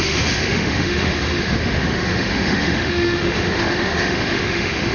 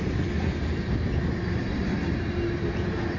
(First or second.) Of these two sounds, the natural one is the second